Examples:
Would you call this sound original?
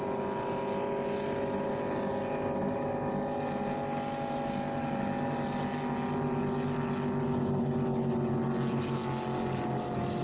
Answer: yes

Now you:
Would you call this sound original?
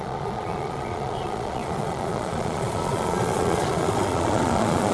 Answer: no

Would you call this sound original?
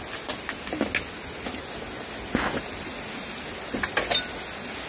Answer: yes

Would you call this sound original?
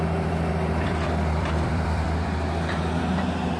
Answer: no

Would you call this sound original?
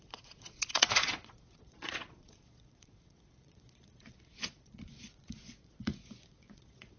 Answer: no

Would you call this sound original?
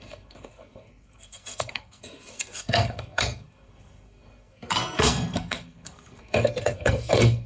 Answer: no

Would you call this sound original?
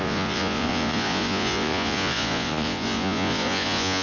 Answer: no